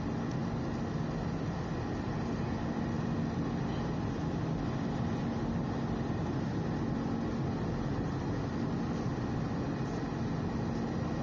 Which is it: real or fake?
real